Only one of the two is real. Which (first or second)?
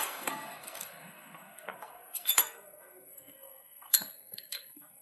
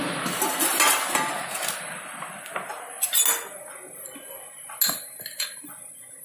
second